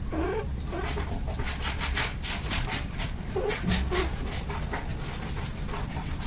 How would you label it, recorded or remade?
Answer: recorded